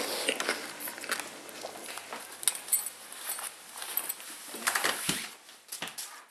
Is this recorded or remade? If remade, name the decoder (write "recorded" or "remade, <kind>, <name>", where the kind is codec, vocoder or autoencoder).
recorded